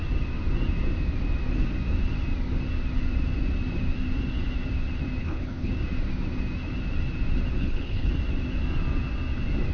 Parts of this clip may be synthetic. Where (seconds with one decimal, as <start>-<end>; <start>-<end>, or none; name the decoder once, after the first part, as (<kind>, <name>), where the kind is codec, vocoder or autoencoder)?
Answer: 5.2-5.7 (codec, HILCodec); 7.6-8.1